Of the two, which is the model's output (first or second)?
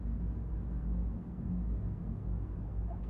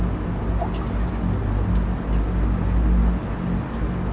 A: first